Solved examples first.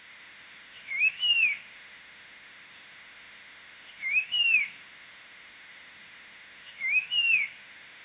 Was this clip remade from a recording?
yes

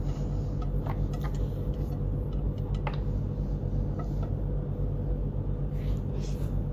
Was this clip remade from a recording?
no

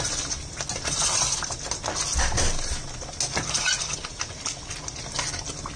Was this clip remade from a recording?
no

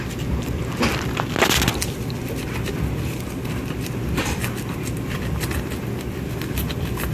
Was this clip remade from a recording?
no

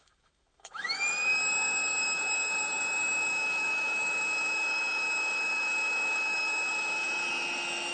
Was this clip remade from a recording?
yes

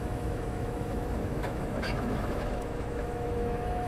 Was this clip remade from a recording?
yes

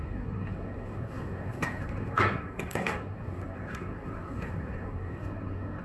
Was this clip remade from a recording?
yes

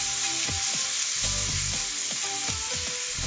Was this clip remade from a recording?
no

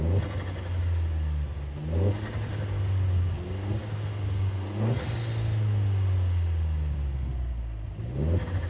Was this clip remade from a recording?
no